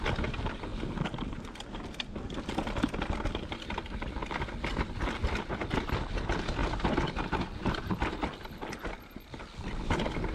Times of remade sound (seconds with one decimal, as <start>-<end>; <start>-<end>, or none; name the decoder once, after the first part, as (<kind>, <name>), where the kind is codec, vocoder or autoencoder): none